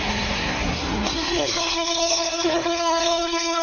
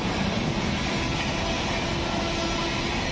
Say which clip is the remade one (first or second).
first